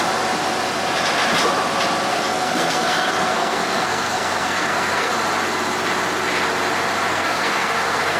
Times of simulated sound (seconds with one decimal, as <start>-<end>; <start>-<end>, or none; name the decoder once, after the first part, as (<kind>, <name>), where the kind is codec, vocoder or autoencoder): 2.1-5.1 (codec, SNAC); 7.1-8.2